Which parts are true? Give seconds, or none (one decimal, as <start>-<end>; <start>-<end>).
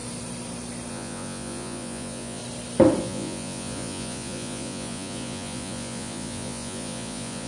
0.0-0.9; 2.4-3.0